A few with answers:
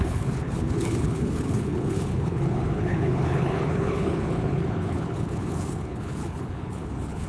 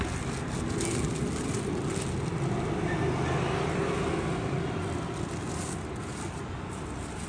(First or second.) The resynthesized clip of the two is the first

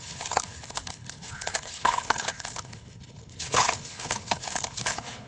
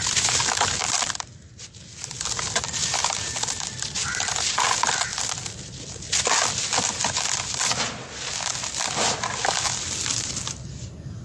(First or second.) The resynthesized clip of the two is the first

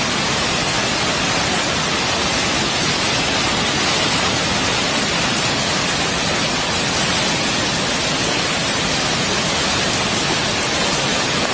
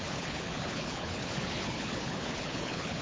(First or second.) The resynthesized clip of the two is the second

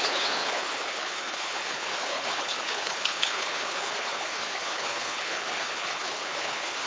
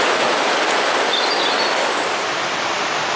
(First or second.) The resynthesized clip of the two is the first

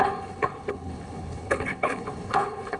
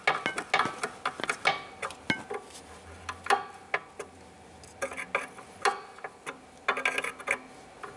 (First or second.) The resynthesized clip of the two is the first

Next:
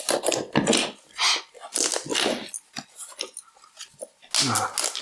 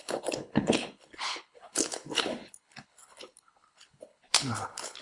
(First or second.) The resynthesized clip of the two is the second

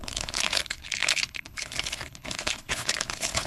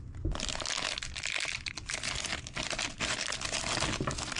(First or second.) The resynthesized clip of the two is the first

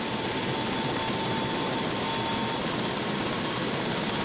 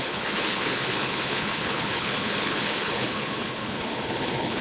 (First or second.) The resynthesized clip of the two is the second